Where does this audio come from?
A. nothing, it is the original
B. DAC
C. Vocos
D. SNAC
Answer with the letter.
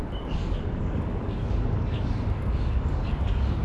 B